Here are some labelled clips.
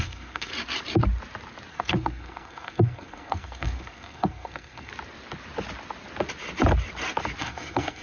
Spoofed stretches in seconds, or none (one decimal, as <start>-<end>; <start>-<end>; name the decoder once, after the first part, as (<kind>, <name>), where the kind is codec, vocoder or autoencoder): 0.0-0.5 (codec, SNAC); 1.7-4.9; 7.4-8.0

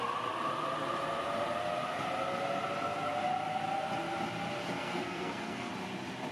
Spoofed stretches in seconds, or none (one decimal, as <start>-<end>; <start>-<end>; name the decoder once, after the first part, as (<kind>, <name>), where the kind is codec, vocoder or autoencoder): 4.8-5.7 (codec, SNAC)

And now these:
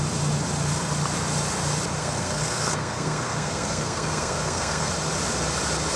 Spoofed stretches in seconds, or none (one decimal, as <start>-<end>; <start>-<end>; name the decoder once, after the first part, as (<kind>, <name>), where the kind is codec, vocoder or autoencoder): 2.0-4.9 (codec, SNAC)

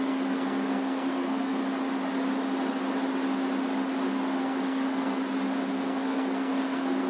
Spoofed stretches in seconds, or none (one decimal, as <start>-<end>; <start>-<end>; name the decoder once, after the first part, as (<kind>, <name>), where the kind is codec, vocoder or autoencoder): 0.0-1.6 (codec, SNAC); 4.4-5.2; 5.7-7.1